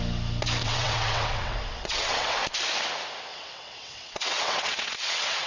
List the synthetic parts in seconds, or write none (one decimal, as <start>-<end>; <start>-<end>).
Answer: 0.6-2.4; 3.3-5.5